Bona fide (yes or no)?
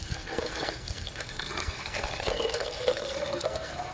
no